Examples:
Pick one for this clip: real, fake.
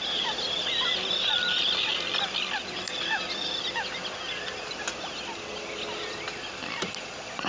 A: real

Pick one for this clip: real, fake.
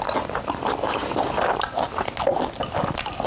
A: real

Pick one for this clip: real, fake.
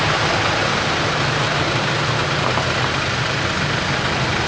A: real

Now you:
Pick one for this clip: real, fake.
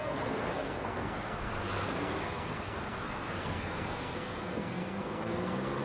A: fake